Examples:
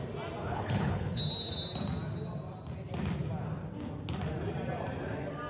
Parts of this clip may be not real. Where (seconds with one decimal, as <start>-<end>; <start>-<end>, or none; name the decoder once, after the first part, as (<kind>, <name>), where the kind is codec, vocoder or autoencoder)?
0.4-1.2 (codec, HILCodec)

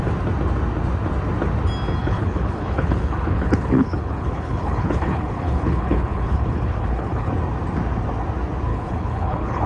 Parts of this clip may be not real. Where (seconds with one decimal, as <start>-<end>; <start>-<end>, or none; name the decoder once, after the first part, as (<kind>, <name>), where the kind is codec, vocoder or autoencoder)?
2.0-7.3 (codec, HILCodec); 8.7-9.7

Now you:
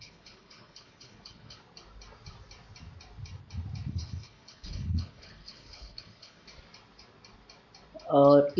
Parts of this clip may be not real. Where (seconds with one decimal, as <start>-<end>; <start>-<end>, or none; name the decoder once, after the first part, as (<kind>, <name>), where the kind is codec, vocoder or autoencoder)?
0.0-1.6 (codec, HILCodec); 3.9-6.5

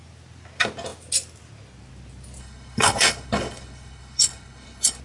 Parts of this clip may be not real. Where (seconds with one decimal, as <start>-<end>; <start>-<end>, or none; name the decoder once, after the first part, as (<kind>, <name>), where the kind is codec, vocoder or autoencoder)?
2.4-5.0 (codec, HILCodec)

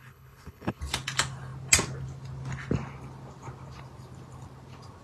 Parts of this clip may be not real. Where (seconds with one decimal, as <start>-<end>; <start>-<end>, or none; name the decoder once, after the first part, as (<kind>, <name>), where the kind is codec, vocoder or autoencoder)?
0.0-0.8 (codec, HILCodec)